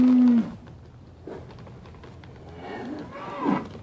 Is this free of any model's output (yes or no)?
yes